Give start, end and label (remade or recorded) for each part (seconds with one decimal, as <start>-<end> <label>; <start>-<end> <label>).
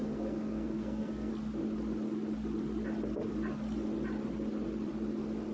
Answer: 0.0-1.3 remade; 1.3-5.5 recorded